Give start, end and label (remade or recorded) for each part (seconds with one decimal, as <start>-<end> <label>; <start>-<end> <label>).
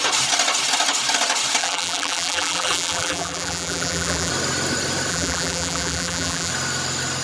0.0-1.6 recorded; 1.6-4.3 remade; 4.3-5.1 recorded; 5.1-6.5 remade; 6.5-7.2 recorded